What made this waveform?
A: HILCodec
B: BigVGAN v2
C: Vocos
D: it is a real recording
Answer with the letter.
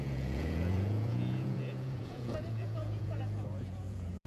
C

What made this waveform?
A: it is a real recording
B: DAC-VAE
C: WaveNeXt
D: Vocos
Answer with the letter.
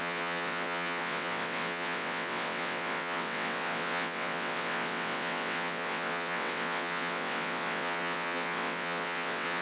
C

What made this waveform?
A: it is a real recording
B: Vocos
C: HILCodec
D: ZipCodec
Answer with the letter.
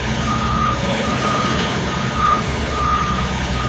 C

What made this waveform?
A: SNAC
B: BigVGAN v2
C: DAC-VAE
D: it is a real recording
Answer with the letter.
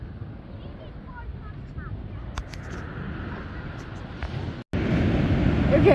D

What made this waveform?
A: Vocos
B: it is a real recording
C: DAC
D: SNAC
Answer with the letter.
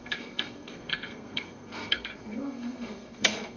D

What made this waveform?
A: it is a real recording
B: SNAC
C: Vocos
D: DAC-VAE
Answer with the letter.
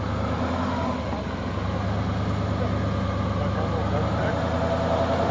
A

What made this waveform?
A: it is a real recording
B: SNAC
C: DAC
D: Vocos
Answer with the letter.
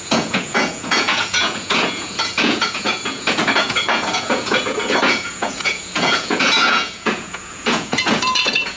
D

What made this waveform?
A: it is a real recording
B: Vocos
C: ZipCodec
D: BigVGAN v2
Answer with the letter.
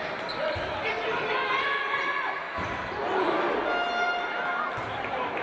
A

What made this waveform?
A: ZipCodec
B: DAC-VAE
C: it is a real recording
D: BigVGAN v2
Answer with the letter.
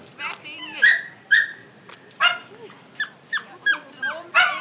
C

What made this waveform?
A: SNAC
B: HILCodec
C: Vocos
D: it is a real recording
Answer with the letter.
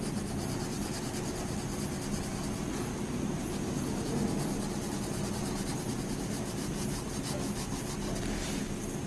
D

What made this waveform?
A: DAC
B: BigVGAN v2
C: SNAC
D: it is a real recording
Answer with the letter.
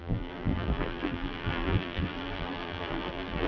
B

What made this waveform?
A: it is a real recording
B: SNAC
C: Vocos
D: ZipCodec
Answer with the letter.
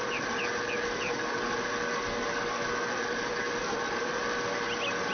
A